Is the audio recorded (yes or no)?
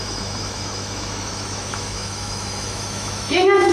no